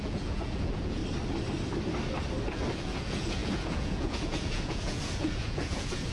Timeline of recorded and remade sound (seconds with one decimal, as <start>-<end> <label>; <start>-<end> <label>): 0.0-1.0 remade; 1.0-2.4 recorded; 2.4-6.1 remade